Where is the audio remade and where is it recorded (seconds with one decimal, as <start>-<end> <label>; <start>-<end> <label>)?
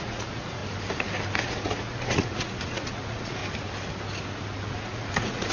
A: 0.0-0.6 remade; 0.6-1.4 recorded; 1.4-3.4 remade; 3.4-4.7 recorded; 4.7-5.5 remade